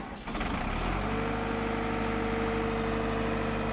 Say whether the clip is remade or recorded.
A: recorded